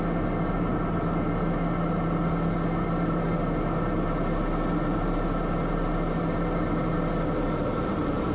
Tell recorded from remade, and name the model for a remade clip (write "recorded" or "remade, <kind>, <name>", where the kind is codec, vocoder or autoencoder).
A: recorded